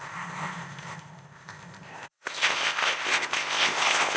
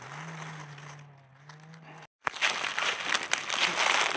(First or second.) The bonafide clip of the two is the second